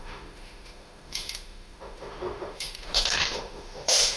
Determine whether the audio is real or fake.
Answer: fake